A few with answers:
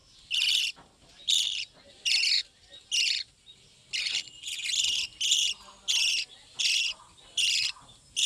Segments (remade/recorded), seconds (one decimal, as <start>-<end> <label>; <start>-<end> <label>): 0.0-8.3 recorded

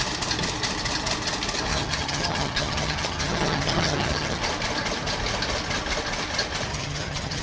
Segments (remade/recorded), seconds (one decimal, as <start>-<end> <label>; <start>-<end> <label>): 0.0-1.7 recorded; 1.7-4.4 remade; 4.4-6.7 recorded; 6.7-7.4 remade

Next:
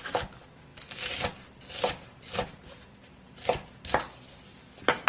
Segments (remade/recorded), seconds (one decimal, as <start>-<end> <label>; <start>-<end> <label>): 0.0-5.1 recorded

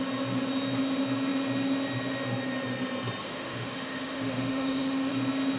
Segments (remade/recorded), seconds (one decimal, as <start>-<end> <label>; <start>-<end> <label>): 0.0-3.2 recorded; 3.2-5.1 remade; 5.1-5.6 recorded